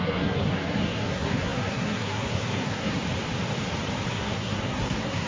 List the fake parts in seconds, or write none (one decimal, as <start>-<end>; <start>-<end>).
0.0-3.0; 4.1-5.3